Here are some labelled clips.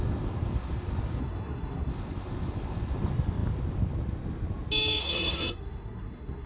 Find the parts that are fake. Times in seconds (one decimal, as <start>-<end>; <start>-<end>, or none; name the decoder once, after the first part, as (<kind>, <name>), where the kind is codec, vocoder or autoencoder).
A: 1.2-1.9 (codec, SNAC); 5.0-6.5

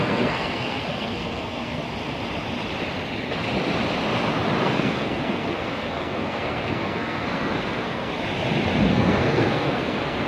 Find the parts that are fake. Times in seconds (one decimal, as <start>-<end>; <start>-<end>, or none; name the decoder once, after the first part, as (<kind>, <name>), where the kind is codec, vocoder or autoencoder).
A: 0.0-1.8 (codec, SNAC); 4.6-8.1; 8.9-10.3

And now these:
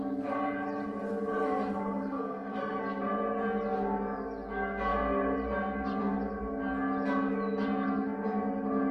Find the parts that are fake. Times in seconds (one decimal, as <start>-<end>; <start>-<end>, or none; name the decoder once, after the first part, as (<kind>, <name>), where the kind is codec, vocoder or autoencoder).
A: 1.3-2.8 (codec, SNAC)

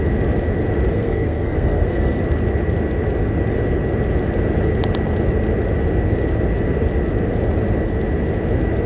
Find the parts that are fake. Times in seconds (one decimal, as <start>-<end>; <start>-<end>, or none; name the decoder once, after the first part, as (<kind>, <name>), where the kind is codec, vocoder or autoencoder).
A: 0.9-2.2 (codec, SNAC)

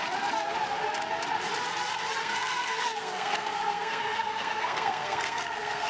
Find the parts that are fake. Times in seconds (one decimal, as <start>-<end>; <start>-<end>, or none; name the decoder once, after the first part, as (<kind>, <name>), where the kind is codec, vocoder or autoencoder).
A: 2.2-5.9 (codec, SNAC)

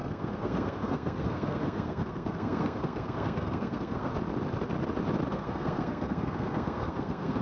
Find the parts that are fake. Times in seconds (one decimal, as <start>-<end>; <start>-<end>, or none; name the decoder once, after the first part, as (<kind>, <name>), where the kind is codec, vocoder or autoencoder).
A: 0.0-4.1 (codec, SNAC); 5.3-7.4